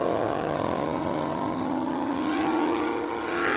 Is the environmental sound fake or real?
fake